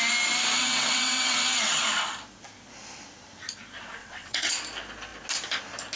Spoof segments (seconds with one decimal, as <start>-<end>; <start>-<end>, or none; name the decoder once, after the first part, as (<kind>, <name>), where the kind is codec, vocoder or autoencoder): 0.6-1.8 (vocoder, WaveNeXt); 4.0-4.6